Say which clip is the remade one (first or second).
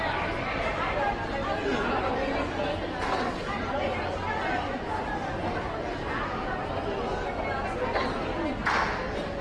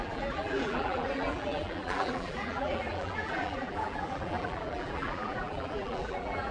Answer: second